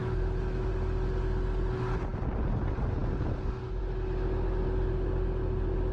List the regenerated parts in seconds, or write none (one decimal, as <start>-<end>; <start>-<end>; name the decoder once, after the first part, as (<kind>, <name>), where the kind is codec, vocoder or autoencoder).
0.0-0.7 (autoencoder, DAC-VAE)